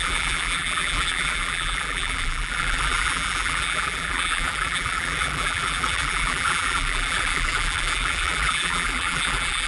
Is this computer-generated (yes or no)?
yes